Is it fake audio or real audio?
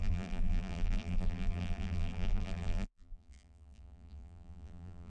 fake